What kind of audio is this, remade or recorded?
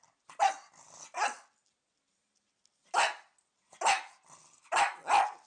recorded